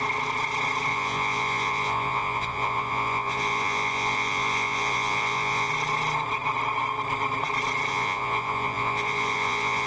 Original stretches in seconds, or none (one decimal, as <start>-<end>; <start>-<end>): 0.0-0.9; 5.7-7.9